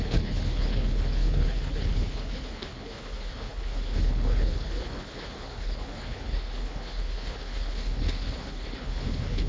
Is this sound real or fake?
fake